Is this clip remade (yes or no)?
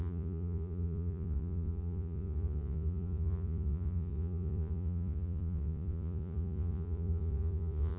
yes